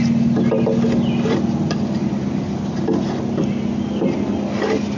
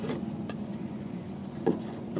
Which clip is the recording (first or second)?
first